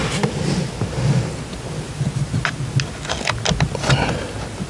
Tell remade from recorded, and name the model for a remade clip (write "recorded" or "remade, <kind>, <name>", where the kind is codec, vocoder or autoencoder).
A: recorded